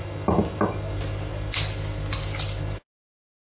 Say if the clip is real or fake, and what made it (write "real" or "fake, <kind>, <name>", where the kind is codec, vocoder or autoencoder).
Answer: real